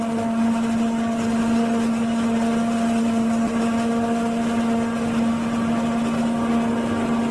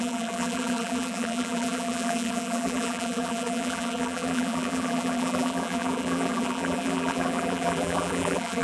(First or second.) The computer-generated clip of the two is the second